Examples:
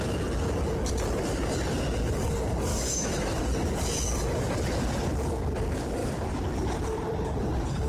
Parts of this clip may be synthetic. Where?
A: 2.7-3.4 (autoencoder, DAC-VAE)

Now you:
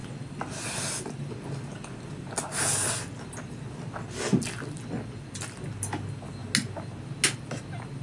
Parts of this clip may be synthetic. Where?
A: none

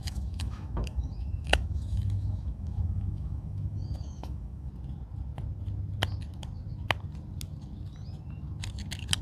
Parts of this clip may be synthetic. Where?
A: 0.0-4.7 (autoencoder, DAC-VAE)

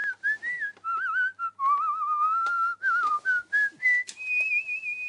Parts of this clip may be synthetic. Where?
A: none

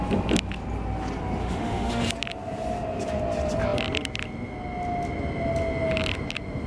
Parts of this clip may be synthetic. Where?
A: 1.4-2.1 (autoencoder, DAC-VAE)

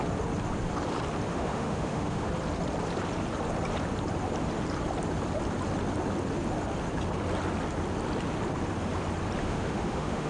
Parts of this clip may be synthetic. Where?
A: 1.3-2.3 (autoencoder, DAC-VAE); 9.4-10.3

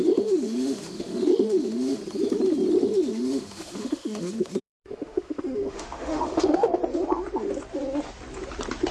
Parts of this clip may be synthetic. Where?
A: 0.0-2.0 (autoencoder, DAC-VAE); 2.7-6.8